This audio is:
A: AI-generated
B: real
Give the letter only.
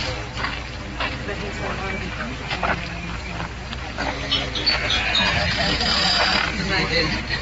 B